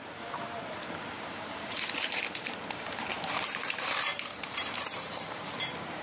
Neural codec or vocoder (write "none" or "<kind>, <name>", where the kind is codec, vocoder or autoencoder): vocoder, BigVGAN v2